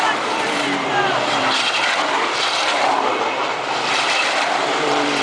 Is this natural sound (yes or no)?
no